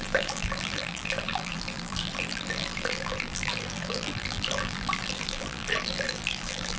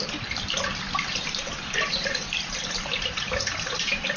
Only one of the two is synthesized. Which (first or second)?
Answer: first